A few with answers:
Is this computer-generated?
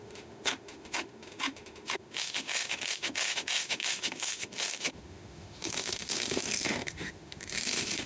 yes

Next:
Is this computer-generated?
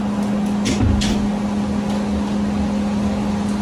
no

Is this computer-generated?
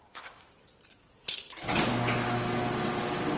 no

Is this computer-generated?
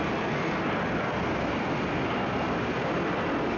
no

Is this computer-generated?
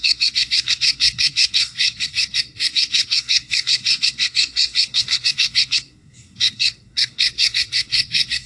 yes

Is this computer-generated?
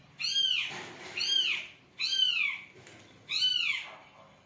no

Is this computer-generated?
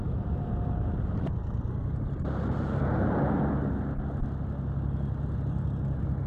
no